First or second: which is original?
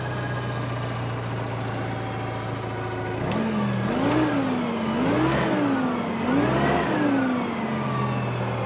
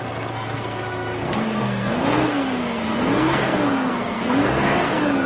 first